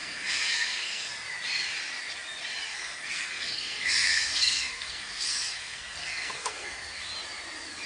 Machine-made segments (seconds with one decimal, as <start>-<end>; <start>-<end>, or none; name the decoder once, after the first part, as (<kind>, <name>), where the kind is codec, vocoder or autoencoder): 0.0-1.1 (codec, SNAC); 2.7-7.0